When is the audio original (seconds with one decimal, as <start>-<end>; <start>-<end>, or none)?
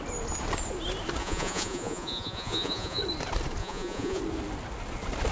0.0-1.2; 3.0-3.6; 4.2-5.3